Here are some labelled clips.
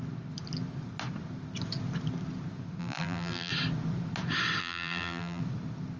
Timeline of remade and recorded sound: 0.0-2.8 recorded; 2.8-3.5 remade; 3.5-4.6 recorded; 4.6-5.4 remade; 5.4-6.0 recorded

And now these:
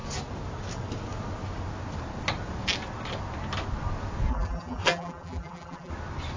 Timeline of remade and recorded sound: 0.0-4.3 recorded; 4.3-5.9 remade; 5.9-6.4 recorded

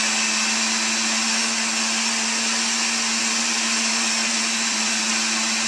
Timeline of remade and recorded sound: 0.0-3.2 recorded; 3.2-5.1 remade; 5.1-5.7 recorded

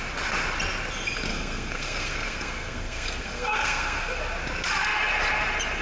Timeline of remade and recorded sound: 0.0-1.3 recorded; 1.3-4.2 remade; 4.2-5.8 recorded

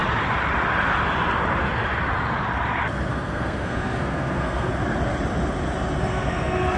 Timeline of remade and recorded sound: 0.0-3.1 recorded; 3.1-4.7 remade; 4.7-6.0 recorded; 6.0-6.8 remade